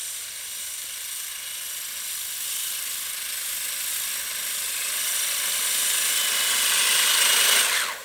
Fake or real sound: real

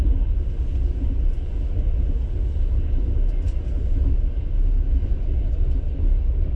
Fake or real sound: real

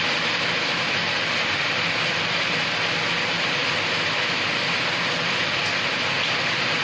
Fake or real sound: real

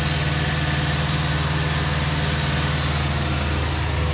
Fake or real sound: real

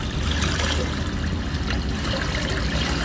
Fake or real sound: fake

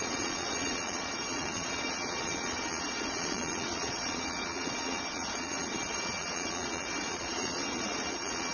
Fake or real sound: fake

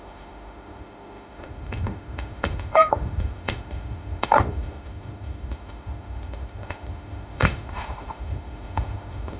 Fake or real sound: fake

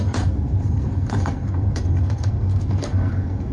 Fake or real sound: fake